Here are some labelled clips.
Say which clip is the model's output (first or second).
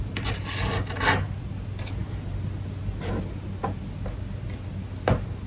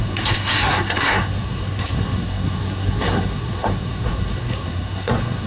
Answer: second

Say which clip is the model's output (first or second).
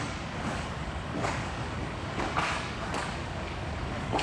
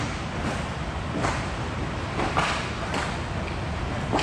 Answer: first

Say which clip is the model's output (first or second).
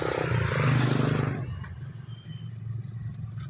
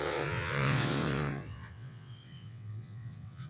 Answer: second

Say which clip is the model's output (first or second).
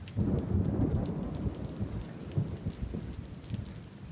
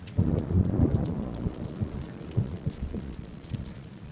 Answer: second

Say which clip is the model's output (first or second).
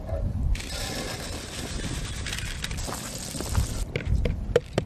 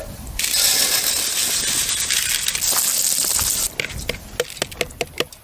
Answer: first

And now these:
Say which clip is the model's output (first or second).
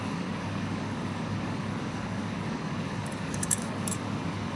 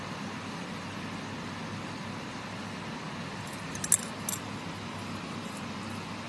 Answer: first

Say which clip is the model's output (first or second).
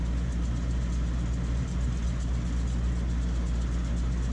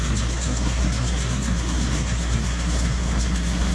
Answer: second